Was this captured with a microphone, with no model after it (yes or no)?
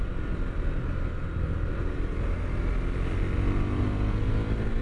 yes